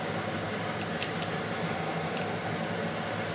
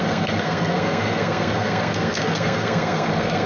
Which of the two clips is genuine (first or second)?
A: first